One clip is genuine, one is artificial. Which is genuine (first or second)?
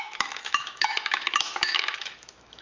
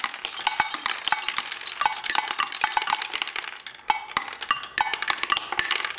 second